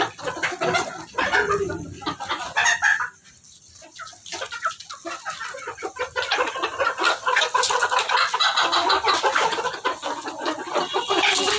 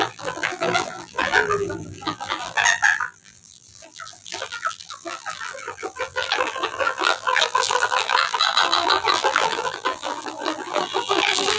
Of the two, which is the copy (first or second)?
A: second